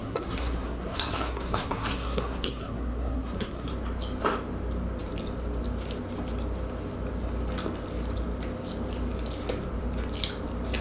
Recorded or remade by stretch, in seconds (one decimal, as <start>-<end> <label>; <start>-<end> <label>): 0.0-3.7 remade; 3.7-10.8 recorded